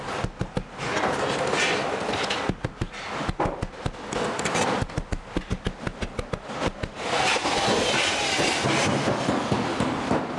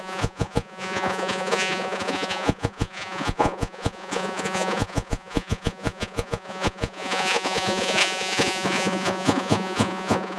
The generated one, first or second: second